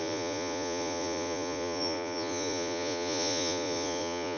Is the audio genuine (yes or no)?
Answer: no